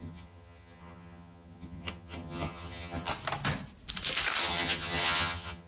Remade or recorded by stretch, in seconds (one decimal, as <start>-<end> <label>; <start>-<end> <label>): 0.0-3.1 remade; 3.1-4.4 recorded; 4.4-5.7 remade